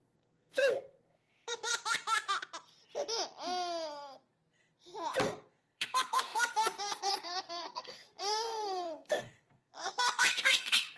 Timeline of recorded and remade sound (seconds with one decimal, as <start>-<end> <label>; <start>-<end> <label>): 0.0-1.7 remade; 1.7-5.6 recorded; 5.6-11.0 remade